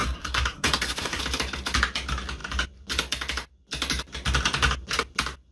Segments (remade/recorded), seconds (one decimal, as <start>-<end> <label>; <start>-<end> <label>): 0.0-1.2 remade; 1.2-5.5 recorded